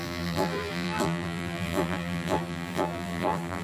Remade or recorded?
remade